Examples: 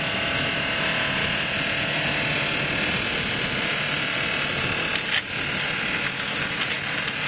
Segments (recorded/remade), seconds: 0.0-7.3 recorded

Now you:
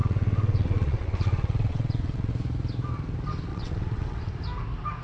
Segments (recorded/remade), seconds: 0.0-2.3 remade; 2.3-3.5 recorded; 3.5-4.3 remade; 4.3-5.0 recorded